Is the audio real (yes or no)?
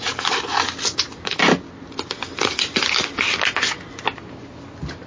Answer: yes